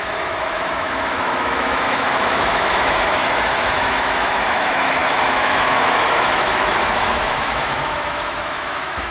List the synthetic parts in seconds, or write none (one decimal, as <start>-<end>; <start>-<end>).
0.0-9.1